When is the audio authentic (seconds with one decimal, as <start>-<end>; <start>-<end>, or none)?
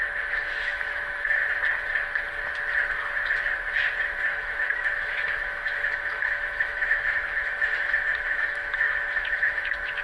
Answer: 1.4-4.2